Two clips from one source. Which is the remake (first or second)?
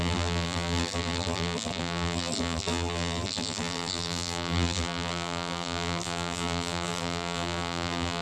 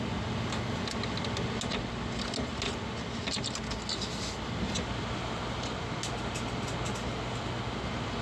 first